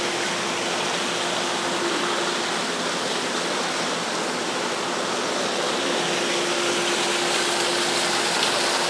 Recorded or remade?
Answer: recorded